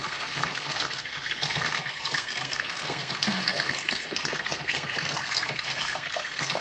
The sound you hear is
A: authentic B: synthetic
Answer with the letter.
B